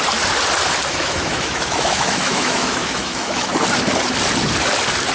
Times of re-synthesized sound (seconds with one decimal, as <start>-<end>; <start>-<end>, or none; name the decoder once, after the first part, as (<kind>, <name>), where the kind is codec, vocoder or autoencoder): 0.9-3.5 (autoencoder, DAC-VAE)